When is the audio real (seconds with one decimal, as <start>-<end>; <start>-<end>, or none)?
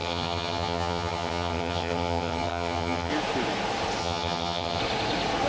3.1-4.0; 4.8-5.5